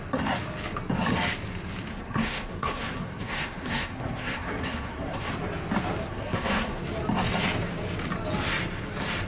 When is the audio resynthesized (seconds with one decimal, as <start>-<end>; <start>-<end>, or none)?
1.9-5.3; 6.0-6.8